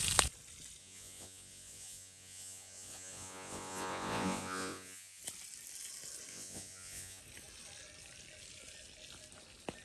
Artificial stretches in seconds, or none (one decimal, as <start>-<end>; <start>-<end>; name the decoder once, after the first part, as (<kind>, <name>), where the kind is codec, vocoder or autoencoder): 0.8-5.2 (vocoder, Vocos); 6.3-7.2